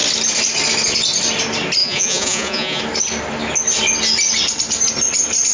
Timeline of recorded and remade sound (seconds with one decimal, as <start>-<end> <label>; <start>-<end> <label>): 0.0-1.8 recorded; 1.8-2.8 remade; 2.8-5.5 recorded